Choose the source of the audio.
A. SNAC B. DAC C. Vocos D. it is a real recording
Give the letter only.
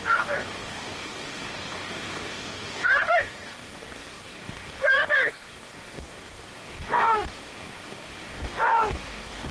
B